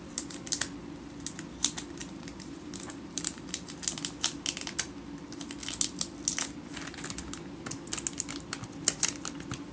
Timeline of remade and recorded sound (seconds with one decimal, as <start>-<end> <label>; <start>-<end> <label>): 0.0-2.0 recorded; 2.0-3.8 remade; 3.8-9.7 recorded